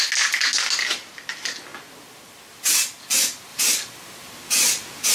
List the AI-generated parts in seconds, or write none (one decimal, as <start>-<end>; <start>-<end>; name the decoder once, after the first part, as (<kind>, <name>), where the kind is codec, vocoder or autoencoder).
3.5-5.1 (vocoder, BigVGAN v2)